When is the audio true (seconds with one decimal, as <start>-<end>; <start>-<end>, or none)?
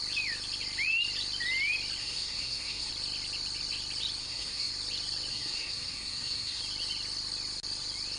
0.0-2.0; 2.9-4.2; 4.7-5.3; 6.6-8.2